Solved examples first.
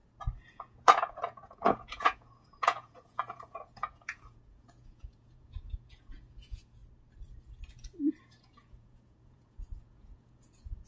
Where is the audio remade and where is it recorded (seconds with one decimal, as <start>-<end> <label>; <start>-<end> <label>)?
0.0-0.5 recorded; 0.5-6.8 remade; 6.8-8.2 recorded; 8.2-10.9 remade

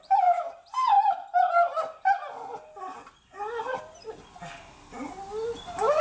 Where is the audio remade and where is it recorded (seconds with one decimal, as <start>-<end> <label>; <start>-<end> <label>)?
0.0-6.0 recorded

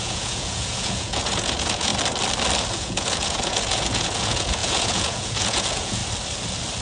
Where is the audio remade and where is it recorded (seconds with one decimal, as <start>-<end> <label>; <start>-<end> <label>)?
0.0-1.9 remade; 1.9-2.7 recorded; 2.7-6.0 remade; 6.0-6.8 recorded

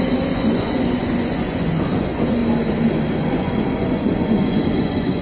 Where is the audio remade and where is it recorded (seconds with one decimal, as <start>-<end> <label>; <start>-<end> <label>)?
0.0-2.4 remade; 2.4-3.1 recorded; 3.1-5.2 remade

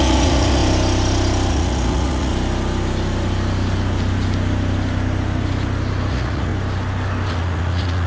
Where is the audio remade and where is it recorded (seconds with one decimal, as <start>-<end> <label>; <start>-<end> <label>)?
0.0-0.6 remade; 0.6-1.5 recorded; 1.5-2.3 remade; 2.3-6.1 recorded; 6.1-6.5 remade; 6.5-7.3 recorded; 7.3-8.1 remade